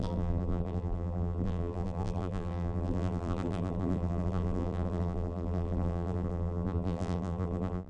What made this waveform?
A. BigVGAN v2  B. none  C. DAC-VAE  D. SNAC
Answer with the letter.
A